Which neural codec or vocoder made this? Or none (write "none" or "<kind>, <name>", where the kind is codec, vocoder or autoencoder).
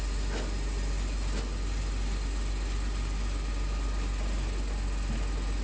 none